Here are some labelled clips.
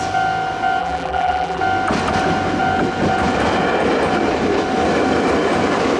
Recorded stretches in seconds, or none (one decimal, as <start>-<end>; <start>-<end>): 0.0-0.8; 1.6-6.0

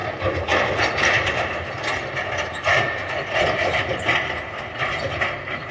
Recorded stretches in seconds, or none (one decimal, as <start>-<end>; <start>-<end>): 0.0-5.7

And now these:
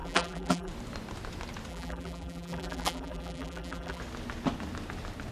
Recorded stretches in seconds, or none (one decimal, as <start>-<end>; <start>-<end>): 0.7-1.7; 4.0-5.3

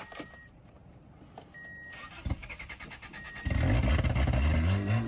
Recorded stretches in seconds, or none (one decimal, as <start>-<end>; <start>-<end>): 0.0-5.1

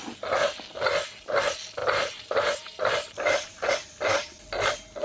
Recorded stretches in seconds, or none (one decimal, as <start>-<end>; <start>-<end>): 0.0-1.8; 3.7-5.0